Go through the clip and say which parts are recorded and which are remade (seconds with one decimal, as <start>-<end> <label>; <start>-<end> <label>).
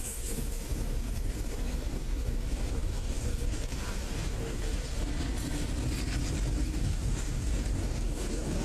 0.0-5.0 remade; 5.0-6.5 recorded; 6.5-8.6 remade